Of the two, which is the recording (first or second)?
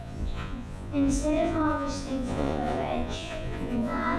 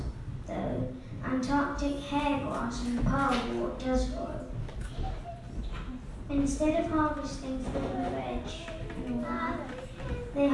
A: second